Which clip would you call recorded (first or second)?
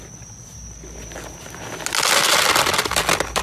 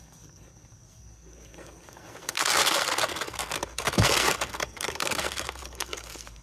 first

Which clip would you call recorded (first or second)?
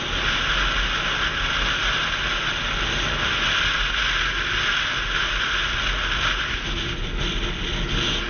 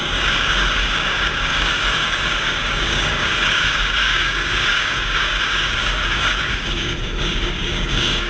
first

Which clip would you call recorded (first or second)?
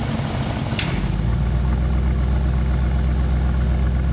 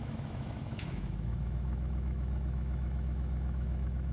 first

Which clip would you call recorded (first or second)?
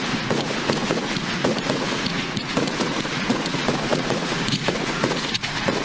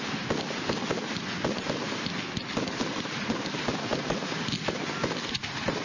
second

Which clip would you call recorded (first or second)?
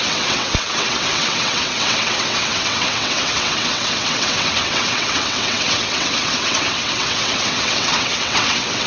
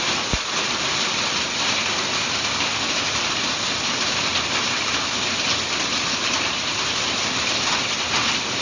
second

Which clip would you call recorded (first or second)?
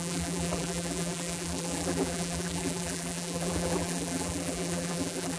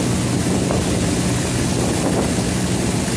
second